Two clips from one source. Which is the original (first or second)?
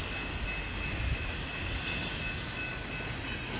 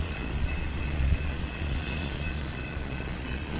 first